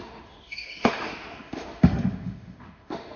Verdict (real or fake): fake